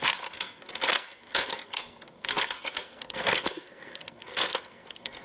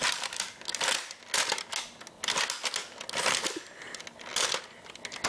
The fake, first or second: first